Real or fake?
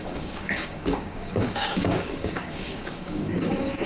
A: fake